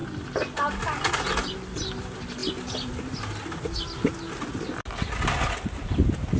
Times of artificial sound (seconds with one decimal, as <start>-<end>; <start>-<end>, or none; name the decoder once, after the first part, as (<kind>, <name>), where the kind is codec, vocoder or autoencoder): none